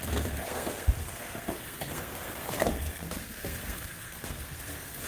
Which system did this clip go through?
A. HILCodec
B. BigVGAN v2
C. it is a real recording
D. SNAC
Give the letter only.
D